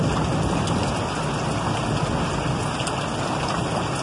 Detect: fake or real real